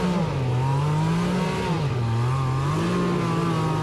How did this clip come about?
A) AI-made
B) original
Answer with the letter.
B